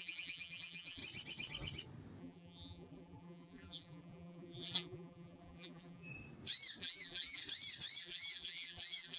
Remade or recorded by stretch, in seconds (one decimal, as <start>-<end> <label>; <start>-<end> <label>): 0.0-1.0 remade; 1.0-2.2 recorded; 2.2-6.1 remade; 6.1-6.8 recorded; 6.8-7.4 remade; 7.4-8.0 recorded; 8.0-9.2 remade